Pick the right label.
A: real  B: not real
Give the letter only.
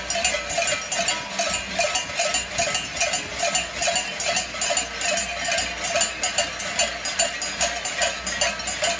A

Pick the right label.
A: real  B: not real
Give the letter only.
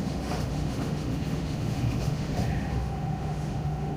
B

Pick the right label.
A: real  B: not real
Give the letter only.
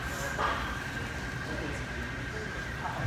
A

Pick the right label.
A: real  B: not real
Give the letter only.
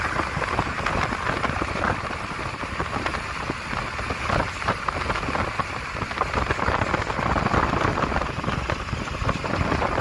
A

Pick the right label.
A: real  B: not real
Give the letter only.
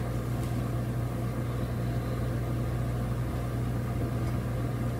A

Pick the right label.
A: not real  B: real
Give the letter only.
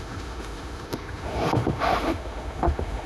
A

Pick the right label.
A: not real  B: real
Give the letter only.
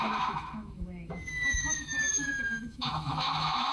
A